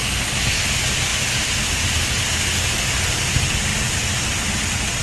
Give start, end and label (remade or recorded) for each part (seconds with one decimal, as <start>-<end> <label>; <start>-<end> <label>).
0.0-5.0 recorded

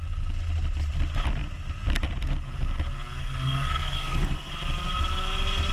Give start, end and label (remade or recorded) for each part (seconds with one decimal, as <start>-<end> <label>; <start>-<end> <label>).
0.0-3.2 recorded; 3.2-4.5 remade; 4.5-5.7 recorded

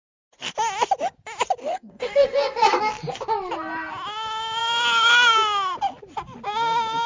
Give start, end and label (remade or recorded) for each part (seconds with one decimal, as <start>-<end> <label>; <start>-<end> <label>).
0.0-1.6 recorded; 1.6-2.8 remade; 2.8-7.1 recorded

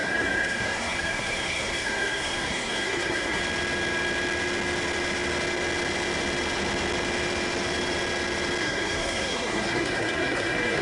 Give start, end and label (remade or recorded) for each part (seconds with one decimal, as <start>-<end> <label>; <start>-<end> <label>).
0.0-3.4 remade; 3.4-8.6 recorded; 8.6-10.8 remade